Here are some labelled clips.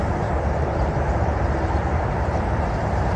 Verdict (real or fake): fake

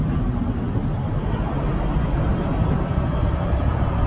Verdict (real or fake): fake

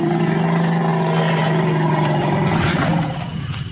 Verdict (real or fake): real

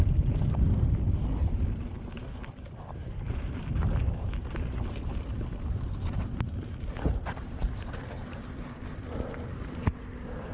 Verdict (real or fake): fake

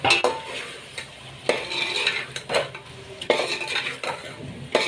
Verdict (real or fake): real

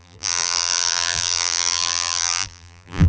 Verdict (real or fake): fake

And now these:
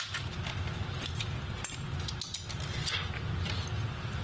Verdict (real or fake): real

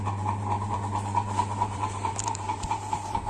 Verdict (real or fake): fake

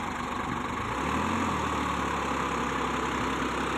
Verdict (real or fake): real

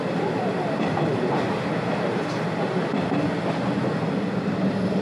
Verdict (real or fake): fake